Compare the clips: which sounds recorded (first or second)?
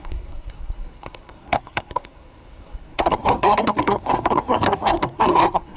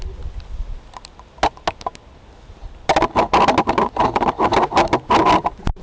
second